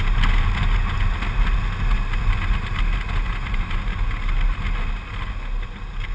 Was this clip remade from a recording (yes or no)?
no